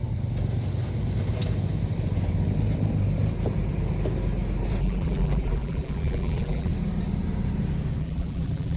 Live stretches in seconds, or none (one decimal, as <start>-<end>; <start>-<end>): 0.0-4.8; 6.7-8.0